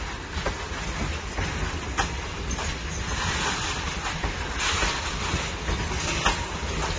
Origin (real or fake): real